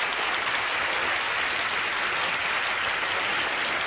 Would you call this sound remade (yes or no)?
no